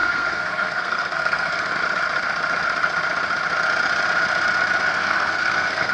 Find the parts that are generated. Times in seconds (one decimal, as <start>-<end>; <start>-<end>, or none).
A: 0.0-1.7; 4.9-5.9